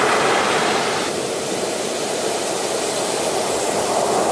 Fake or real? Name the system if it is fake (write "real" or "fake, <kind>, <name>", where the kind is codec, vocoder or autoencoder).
real